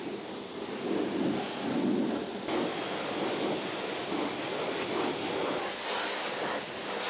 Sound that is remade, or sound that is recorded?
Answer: recorded